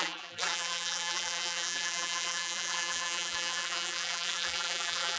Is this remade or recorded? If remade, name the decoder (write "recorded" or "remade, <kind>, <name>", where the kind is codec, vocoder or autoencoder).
remade, vocoder, BigVGAN v2